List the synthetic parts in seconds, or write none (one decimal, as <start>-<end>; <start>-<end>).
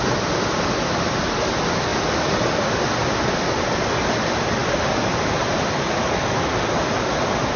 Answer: none